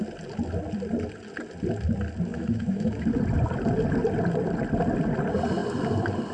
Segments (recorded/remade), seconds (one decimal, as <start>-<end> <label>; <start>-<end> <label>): 0.0-2.3 recorded; 2.3-3.1 remade; 3.1-6.3 recorded

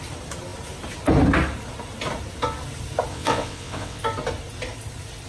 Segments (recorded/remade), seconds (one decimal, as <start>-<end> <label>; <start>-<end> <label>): 0.0-3.1 recorded; 3.1-4.0 remade; 4.0-5.3 recorded